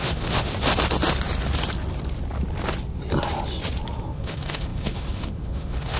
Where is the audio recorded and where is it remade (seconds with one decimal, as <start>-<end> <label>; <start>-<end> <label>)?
0.0-0.5 remade; 0.5-4.1 recorded; 4.1-6.0 remade

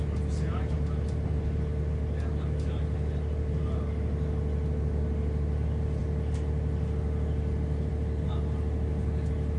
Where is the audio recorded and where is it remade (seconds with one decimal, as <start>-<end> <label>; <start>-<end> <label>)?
0.0-9.6 recorded